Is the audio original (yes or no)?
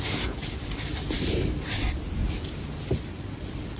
yes